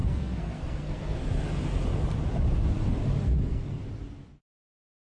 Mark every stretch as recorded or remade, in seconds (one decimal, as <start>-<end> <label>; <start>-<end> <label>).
0.0-1.6 remade; 1.6-3.2 recorded; 3.2-3.8 remade; 3.8-4.5 recorded; 4.5-5.2 remade